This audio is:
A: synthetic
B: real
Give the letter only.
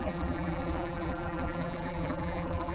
A